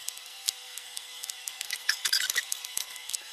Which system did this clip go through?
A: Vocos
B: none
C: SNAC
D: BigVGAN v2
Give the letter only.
C